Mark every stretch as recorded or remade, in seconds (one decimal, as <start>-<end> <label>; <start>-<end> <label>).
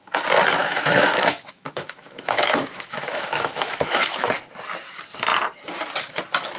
0.0-0.6 recorded; 0.6-4.3 remade; 4.3-6.6 recorded